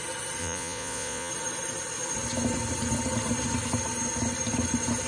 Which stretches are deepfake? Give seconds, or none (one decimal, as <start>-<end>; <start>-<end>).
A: 0.4-1.3